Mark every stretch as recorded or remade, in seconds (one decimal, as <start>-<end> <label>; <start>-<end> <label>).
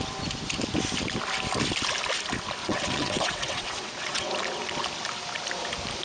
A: 0.0-2.6 recorded; 2.6-4.3 remade; 4.3-6.0 recorded